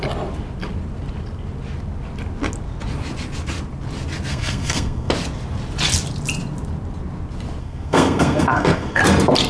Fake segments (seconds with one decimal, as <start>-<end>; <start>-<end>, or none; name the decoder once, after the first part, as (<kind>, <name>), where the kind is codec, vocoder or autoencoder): 4.3-5.1 (codec, SNAC); 7.6-9.0